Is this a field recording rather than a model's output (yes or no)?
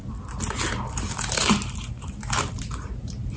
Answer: no